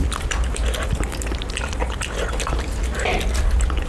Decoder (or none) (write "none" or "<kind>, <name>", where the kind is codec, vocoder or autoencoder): none